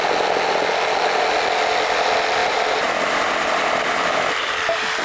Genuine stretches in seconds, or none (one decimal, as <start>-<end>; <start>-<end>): 0.0-2.4